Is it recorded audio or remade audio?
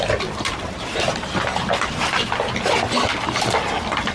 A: recorded